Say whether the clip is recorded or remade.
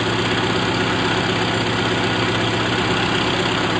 recorded